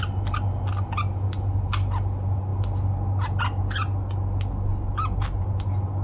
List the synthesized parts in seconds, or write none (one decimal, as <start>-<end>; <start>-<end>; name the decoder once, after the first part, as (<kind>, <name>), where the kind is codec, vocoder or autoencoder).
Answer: none